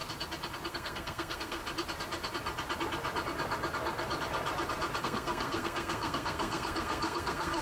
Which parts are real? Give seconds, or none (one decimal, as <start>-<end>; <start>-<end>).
0.0-0.7; 1.6-5.0